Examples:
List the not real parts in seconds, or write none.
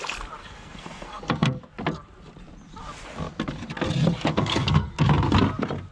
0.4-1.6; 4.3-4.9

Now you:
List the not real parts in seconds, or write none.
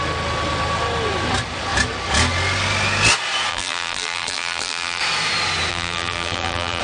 3.5-5.0; 5.7-6.8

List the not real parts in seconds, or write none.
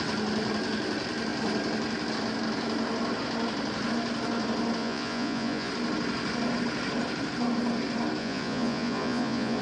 4.8-5.7; 8.2-9.6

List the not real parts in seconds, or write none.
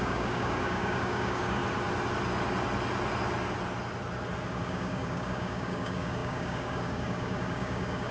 0.0-1.6; 4.5-8.1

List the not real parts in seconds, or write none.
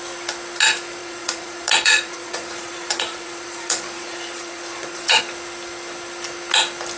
1.0-5.2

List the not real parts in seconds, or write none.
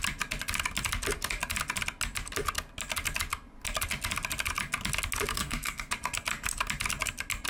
5.3-5.9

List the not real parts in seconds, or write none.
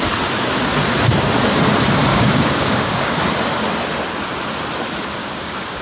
2.1-3.2; 5.2-5.8